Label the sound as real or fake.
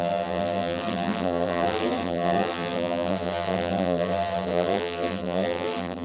fake